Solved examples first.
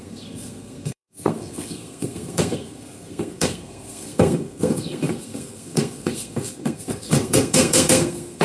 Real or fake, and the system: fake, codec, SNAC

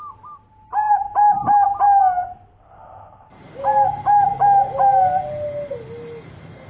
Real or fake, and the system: real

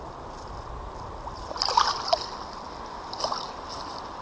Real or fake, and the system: real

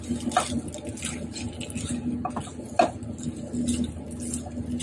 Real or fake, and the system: real